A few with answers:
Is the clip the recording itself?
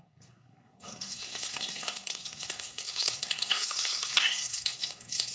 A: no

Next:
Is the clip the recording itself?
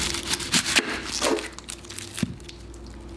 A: yes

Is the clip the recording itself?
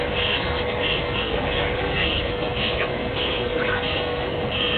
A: no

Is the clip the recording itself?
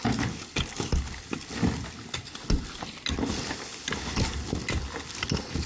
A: yes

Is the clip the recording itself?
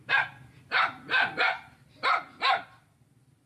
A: yes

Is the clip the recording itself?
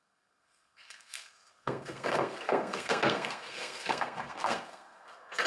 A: no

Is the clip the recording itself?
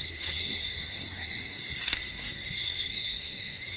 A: no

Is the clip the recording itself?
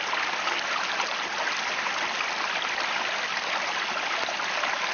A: yes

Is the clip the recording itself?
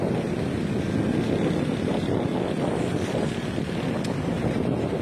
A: yes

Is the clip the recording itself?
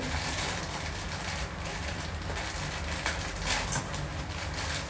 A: yes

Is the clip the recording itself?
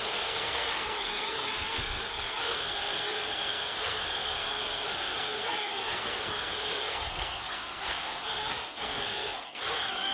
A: no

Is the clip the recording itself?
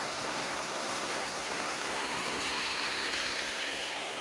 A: no